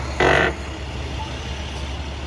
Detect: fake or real real